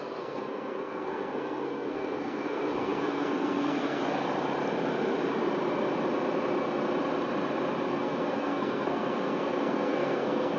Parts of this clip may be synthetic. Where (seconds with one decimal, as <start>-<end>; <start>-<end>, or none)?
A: 0.0-4.0; 7.9-10.6